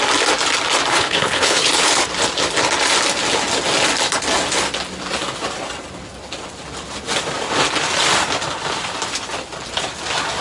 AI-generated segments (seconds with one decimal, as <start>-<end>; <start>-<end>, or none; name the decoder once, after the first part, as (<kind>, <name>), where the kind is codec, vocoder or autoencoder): 0.9-2.0 (codec, HILCodec)